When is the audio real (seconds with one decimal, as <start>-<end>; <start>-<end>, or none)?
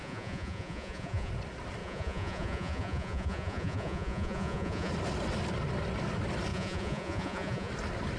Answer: 1.3-1.8; 4.9-6.5; 7.7-8.2